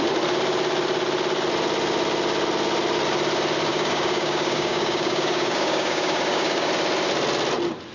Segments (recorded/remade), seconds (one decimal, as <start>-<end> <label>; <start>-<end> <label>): 0.0-3.7 recorded; 3.7-6.7 remade; 6.7-7.9 recorded